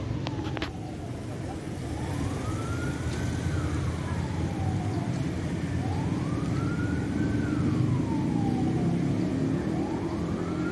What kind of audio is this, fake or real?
real